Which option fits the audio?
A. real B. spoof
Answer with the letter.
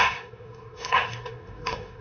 B